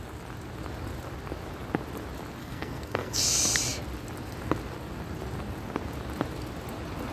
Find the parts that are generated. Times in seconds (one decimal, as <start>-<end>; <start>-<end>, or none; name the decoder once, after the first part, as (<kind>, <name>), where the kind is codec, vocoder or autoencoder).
2.4-3.2 (codec, SNAC)

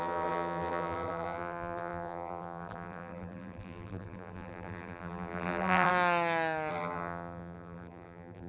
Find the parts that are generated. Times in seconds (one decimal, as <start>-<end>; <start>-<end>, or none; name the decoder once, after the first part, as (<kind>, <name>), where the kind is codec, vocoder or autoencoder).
0.0-5.9 (vocoder, BigVGAN v2); 6.7-8.5

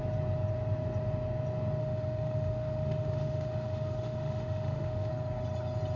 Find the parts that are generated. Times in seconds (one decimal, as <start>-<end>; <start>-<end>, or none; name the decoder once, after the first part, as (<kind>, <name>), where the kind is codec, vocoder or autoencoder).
1.8-5.1 (autoencoder, DAC-VAE)